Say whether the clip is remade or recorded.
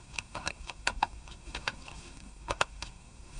remade